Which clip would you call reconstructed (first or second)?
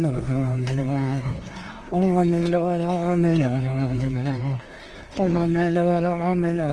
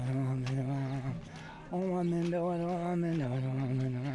first